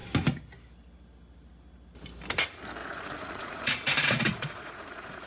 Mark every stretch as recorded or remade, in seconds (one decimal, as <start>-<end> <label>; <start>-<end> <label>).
0.0-2.8 recorded; 2.8-5.3 remade